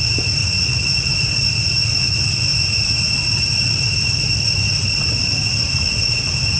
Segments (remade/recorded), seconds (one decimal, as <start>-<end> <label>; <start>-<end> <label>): 0.0-0.4 recorded; 0.4-1.0 remade; 1.0-6.6 recorded